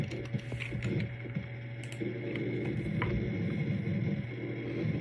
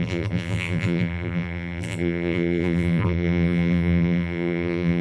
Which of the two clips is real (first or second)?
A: first